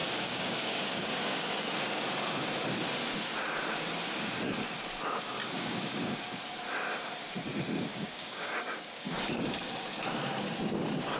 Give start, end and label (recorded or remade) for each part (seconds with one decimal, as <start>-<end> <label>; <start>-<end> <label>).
0.0-1.5 remade; 1.5-5.4 recorded; 5.4-6.1 remade; 6.1-7.9 recorded; 7.9-9.7 remade; 9.7-11.2 recorded